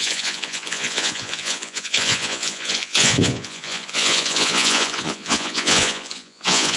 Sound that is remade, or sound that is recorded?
remade